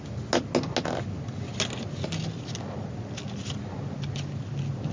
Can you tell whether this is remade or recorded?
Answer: recorded